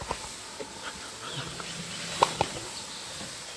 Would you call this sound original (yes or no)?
yes